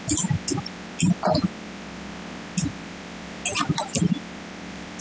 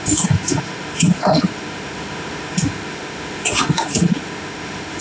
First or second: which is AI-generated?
second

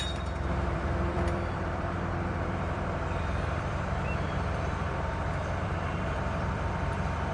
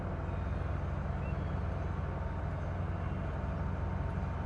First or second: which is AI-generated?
first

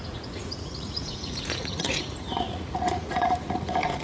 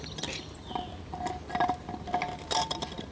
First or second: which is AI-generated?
first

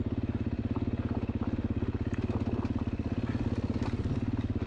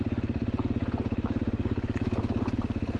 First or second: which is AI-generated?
second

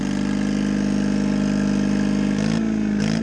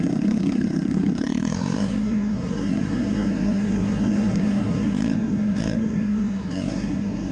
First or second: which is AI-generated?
second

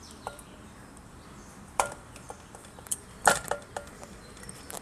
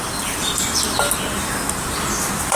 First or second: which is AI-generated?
first